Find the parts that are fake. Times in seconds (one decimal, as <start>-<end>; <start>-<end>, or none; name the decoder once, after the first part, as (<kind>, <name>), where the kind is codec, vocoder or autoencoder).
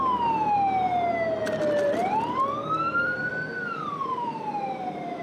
2.0-3.3 (vocoder, BigVGAN v2); 3.9-4.5